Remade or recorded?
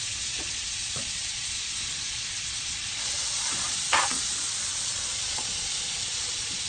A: remade